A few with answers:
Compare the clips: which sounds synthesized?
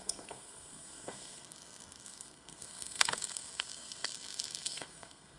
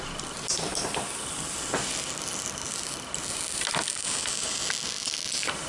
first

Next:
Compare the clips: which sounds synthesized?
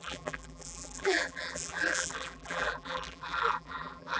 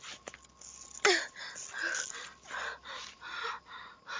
first